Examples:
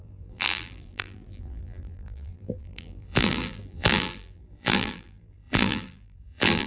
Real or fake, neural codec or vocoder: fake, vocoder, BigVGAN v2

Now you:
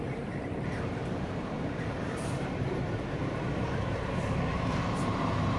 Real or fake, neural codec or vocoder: fake, vocoder, BigVGAN v2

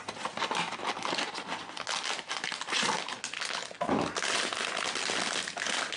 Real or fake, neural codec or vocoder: real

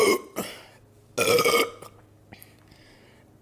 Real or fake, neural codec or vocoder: real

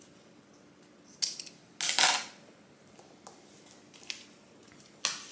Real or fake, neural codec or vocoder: real